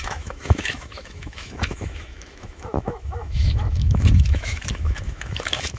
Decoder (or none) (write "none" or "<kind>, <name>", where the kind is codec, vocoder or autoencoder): autoencoder, DAC-VAE